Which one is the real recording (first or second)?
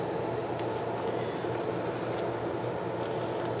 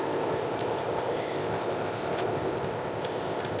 first